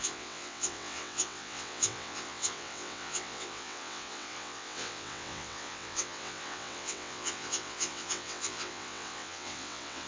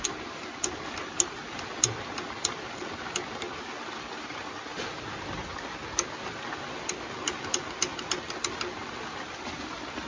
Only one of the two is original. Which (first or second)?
second